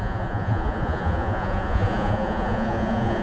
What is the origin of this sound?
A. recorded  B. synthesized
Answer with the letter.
B